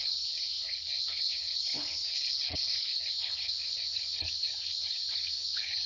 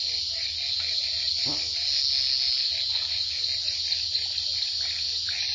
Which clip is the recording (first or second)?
second